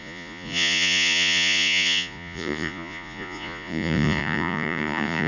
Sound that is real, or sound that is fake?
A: fake